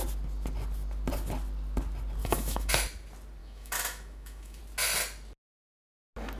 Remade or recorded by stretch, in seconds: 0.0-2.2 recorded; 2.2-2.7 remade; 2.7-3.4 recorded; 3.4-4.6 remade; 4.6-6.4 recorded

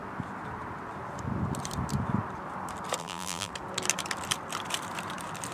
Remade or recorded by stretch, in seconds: 0.0-3.0 recorded; 3.0-3.5 remade; 3.5-5.5 recorded

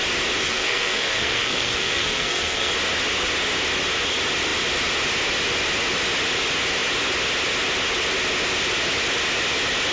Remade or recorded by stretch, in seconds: 0.0-0.4 recorded; 0.4-2.7 remade; 2.7-9.9 recorded

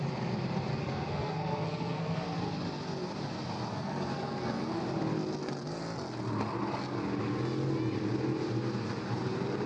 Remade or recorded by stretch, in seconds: 0.0-0.7 recorded; 0.7-2.4 remade; 2.4-3.7 recorded; 3.7-4.8 remade; 4.8-9.7 recorded

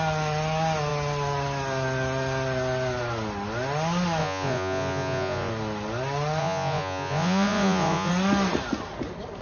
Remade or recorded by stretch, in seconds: 0.0-4.2 recorded; 4.2-5.5 remade; 5.5-6.4 recorded; 6.4-8.1 remade; 8.1-9.4 recorded

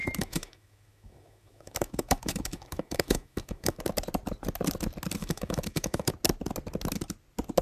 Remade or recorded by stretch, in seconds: 0.0-3.8 remade; 3.8-5.2 recorded; 5.2-6.1 remade; 6.1-7.6 recorded

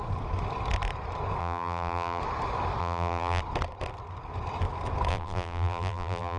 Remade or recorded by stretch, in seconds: 0.0-1.4 recorded; 1.4-2.2 remade; 2.2-2.8 recorded; 2.8-3.4 remade; 3.4-5.1 recorded; 5.1-6.4 remade

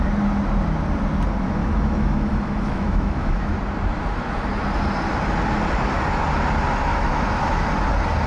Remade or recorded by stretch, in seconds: 0.0-1.6 recorded; 1.6-3.6 remade; 3.6-6.9 recorded; 6.9-7.6 remade; 7.6-8.3 recorded